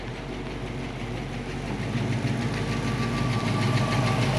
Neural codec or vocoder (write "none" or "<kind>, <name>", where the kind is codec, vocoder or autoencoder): none